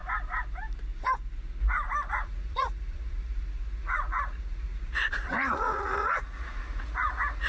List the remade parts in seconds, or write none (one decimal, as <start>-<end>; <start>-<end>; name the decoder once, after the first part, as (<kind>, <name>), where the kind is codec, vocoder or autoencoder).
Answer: 2.1-7.5 (vocoder, Vocos)